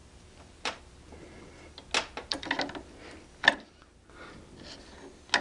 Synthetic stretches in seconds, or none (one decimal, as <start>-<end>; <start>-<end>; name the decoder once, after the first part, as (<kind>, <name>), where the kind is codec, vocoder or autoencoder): 0.0-0.8 (vocoder, BigVGAN v2); 3.5-4.1